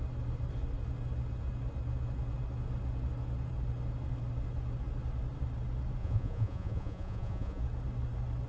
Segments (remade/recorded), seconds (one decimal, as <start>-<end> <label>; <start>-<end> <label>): 0.0-6.0 recorded; 6.0-7.6 remade; 7.6-8.5 recorded